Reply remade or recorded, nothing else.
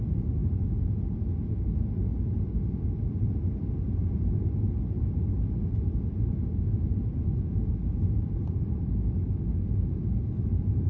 recorded